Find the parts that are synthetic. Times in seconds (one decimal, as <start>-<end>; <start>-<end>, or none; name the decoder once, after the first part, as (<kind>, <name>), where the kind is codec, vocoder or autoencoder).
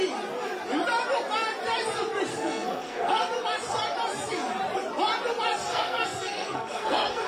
2.3-3.3 (codec, SNAC); 5.7-7.3